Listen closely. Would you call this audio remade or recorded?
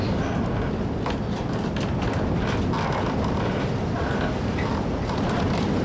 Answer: recorded